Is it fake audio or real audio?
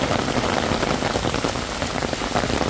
real